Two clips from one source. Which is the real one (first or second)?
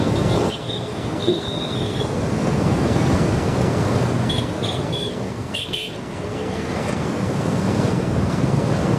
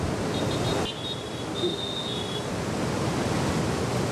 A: second